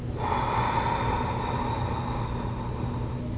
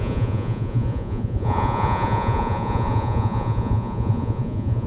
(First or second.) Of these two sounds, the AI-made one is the second